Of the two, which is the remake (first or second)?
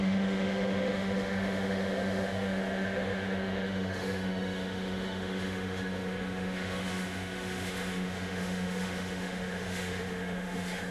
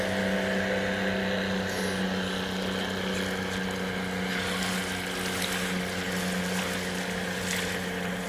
first